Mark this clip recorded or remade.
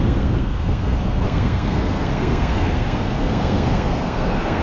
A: remade